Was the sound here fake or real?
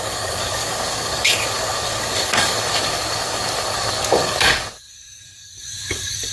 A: fake